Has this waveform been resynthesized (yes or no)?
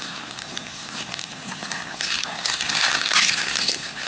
yes